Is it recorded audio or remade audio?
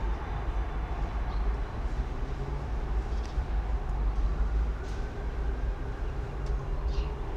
recorded